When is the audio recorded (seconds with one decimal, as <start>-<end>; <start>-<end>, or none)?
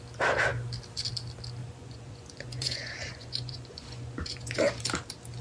0.0-1.6; 4.8-5.4